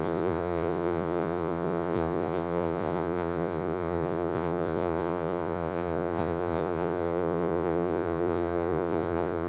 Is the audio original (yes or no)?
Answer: no